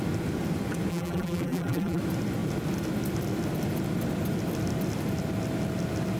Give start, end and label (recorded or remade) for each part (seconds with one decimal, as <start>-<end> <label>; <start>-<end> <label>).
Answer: 0.0-0.9 recorded; 0.9-2.0 remade; 2.0-6.2 recorded